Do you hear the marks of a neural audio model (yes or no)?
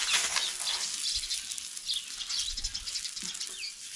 no